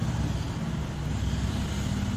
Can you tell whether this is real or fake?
real